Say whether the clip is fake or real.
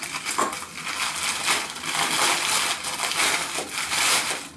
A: real